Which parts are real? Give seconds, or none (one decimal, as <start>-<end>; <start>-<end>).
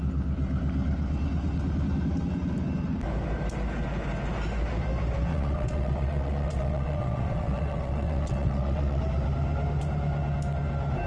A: 0.0-5.3; 9.0-11.1